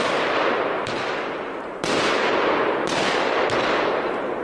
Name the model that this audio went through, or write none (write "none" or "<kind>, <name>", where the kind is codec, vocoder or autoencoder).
none